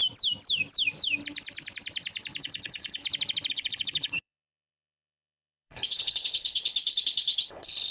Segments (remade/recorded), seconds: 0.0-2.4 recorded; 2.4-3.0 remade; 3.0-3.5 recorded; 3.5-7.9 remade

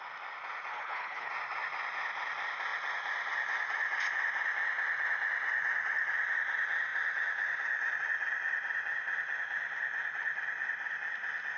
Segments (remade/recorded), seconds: 0.0-0.7 recorded; 0.7-1.3 remade; 1.3-11.6 recorded